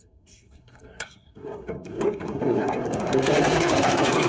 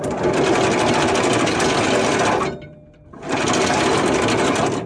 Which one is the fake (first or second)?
first